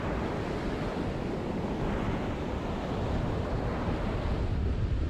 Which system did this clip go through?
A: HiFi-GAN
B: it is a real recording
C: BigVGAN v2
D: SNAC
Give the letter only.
B